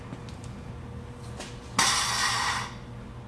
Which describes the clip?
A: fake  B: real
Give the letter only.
B